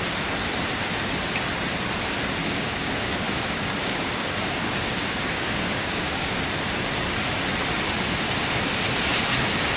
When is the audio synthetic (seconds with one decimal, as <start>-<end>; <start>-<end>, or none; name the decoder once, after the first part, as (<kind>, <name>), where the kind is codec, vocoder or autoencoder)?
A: 2.4-6.4 (codec, DAC)